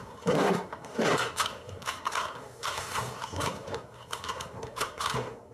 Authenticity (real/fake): fake